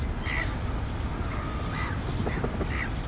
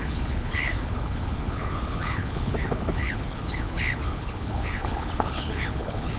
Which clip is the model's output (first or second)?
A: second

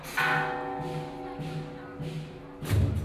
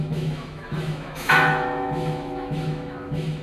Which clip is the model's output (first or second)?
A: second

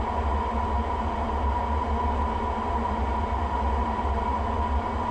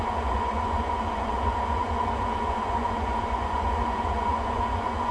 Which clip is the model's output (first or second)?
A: second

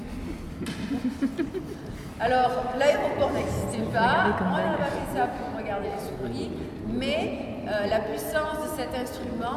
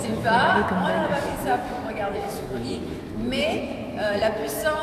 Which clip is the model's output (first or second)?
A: second